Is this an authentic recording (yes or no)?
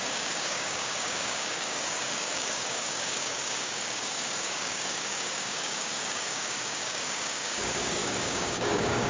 no